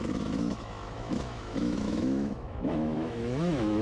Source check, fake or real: fake